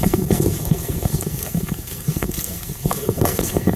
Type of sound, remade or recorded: remade